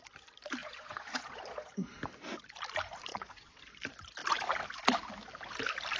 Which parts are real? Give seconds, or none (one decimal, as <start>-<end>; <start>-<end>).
0.0-0.6; 1.7-3.1; 3.6-6.0